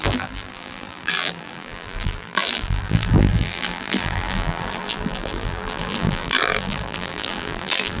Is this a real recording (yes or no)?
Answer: no